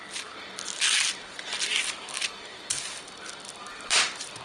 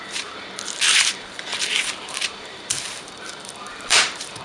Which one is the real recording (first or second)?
first